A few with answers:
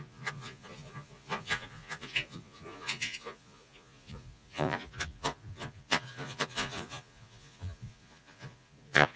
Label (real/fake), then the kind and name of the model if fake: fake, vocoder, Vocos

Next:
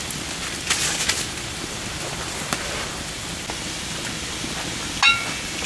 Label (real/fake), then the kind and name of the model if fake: real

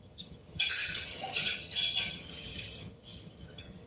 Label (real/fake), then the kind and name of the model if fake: fake, vocoder, HiFi-GAN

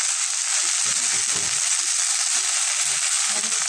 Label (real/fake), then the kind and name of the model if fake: real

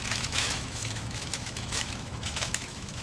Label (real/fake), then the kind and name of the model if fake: fake, autoencoder, DAC-VAE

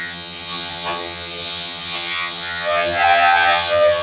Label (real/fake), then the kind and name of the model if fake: fake, vocoder, HiFi-GAN